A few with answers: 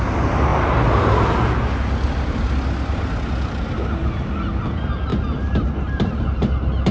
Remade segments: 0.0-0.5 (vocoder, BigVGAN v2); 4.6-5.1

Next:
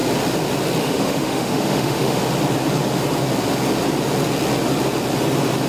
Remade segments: 0.8-2.2 (autoencoder, DAC-VAE)

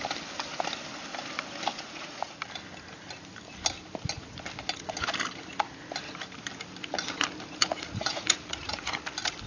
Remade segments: 1.7-2.4 (vocoder, Vocos); 7.6-9.0

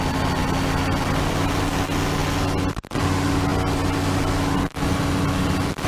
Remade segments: none